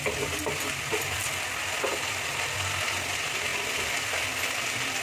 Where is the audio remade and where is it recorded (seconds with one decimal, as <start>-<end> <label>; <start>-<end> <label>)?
0.0-5.0 recorded